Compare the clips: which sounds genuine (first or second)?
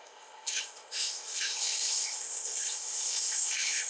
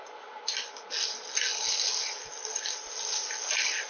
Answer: second